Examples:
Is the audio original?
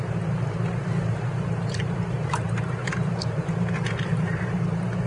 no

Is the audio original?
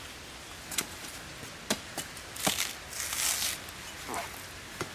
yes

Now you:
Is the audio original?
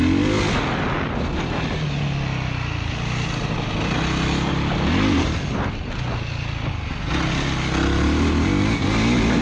yes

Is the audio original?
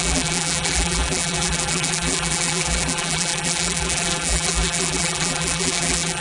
no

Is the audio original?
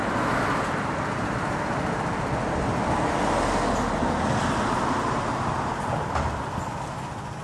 yes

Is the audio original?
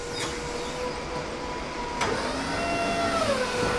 yes